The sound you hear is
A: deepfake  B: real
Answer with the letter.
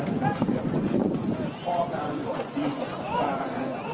A